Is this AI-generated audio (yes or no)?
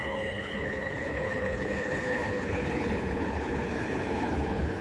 yes